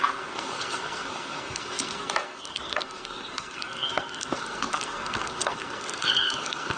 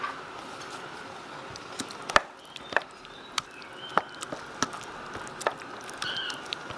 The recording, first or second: second